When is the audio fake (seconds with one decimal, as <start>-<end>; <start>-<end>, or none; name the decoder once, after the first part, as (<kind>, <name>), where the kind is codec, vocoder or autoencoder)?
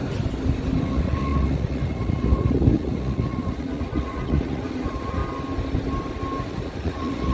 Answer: 0.8-5.2 (vocoder, Vocos); 6.4-7.3